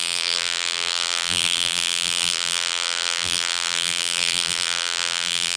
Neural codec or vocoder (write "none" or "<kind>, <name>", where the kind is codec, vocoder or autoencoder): vocoder, BigVGAN v2